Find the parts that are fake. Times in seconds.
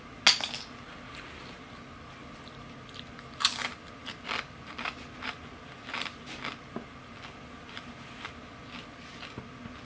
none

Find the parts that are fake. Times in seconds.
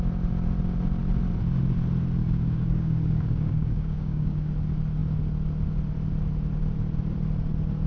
2.2-4.5 (codec, DAC)